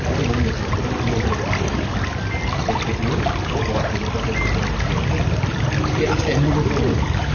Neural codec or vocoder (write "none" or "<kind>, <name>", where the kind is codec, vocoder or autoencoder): none